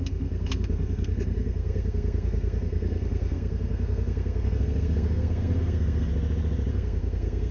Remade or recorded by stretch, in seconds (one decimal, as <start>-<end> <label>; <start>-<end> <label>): 0.0-6.1 remade; 6.1-6.7 recorded; 6.7-7.5 remade